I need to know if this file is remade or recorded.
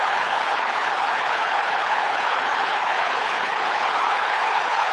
remade